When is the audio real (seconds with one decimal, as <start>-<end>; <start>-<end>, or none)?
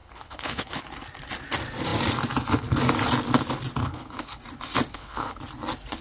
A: 0.8-3.8; 4.4-4.9; 5.4-6.0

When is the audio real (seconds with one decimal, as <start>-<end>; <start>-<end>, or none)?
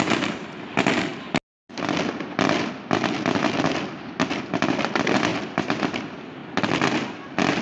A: 0.0-5.3; 5.8-7.6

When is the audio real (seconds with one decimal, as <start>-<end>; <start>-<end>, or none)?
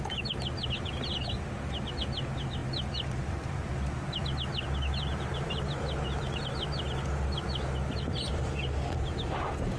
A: 0.0-9.8